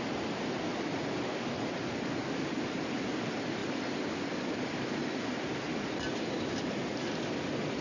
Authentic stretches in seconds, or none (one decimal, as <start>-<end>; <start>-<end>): 0.0-7.8